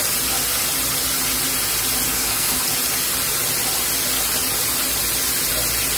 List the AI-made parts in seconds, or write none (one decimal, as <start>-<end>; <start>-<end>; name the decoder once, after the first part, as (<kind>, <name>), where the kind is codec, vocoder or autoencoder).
2.1-2.6 (codec, SNAC)